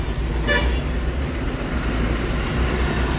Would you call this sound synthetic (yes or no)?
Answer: no